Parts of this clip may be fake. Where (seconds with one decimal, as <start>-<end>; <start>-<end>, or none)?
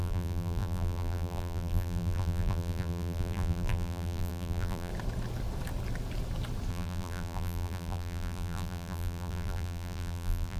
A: 0.0-4.9; 6.7-10.6